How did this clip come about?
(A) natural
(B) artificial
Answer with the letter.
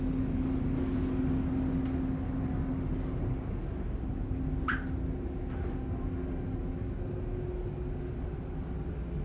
A